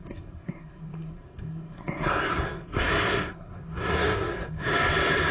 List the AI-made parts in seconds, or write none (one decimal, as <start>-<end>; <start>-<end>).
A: 0.0-4.7